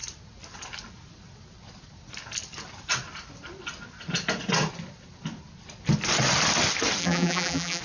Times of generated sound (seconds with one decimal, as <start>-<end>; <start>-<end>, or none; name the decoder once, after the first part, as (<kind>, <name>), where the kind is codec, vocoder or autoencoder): 7.0-7.8 (vocoder, BigVGAN v2)